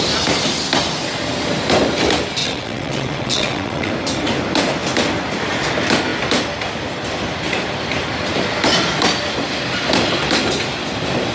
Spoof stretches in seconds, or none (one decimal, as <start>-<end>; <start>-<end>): 2.4-3.9